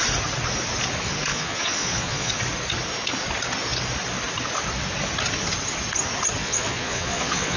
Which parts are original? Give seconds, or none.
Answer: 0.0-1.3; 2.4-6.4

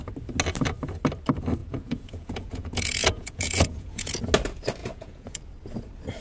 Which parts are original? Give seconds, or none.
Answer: 0.0-1.6; 4.2-4.8; 5.4-6.2

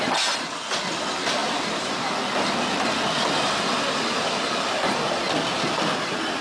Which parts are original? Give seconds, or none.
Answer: 0.0-6.4

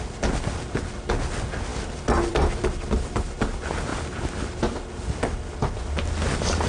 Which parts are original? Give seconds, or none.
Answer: 0.0-6.7

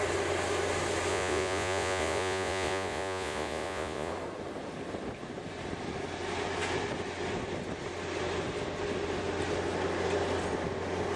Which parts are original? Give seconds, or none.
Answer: 0.0-1.1; 4.1-11.2